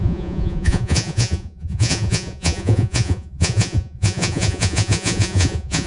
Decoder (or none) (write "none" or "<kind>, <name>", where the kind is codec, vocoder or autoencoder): vocoder, Vocos